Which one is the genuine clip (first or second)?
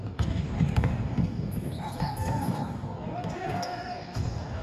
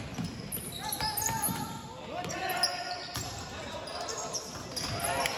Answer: second